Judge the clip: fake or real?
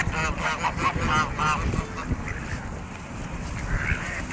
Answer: real